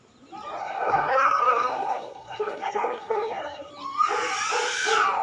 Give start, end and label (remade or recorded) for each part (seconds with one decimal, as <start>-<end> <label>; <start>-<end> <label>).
0.0-0.6 recorded; 0.6-3.7 remade; 3.7-5.2 recorded